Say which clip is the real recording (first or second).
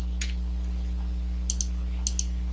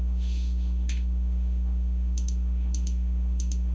first